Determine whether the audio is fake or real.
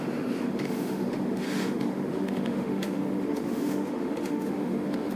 fake